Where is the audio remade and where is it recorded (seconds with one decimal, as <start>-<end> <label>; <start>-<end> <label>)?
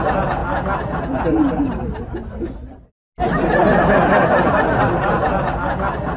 0.0-6.2 recorded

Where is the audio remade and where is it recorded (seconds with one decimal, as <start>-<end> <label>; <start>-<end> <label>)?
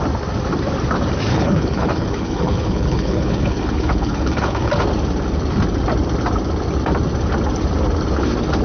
0.0-1.3 recorded; 1.3-4.7 remade; 4.7-8.6 recorded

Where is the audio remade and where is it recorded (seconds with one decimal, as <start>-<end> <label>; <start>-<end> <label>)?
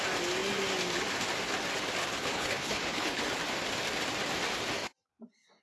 0.0-2.0 recorded; 2.0-3.2 remade; 3.2-5.6 recorded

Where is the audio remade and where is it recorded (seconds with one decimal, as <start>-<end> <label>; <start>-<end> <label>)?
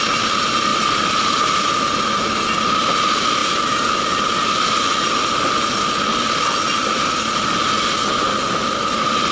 0.0-9.3 recorded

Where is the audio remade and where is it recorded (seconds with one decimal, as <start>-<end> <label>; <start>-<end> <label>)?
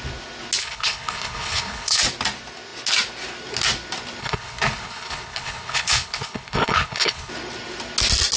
0.0-0.6 recorded; 0.6-2.0 remade; 2.0-4.2 recorded; 4.2-7.3 remade; 7.3-8.4 recorded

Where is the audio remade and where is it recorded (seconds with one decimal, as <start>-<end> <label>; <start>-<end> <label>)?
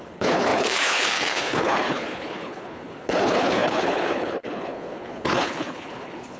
0.0-6.4 remade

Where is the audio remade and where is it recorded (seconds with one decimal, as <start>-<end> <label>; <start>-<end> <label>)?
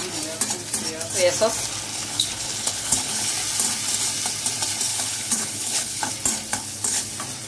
0.0-1.9 recorded; 1.9-3.3 remade; 3.3-4.9 recorded; 4.9-6.1 remade; 6.1-6.5 recorded; 6.5-7.1 remade; 7.1-7.5 recorded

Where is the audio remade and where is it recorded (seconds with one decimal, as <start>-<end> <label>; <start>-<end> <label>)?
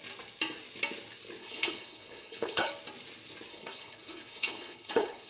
0.0-1.4 recorded; 1.4-2.7 remade; 2.7-3.5 recorded; 3.5-5.3 remade